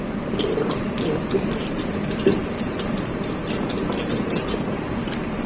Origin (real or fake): fake